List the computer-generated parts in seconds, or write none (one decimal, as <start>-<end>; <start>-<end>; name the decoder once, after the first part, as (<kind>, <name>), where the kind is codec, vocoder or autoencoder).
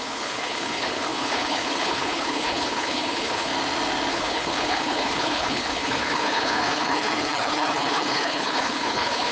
0.0-3.5 (codec, HILCodec); 4.1-9.3